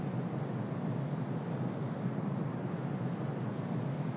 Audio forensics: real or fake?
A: real